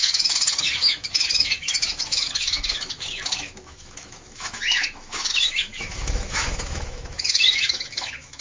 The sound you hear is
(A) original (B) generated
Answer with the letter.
B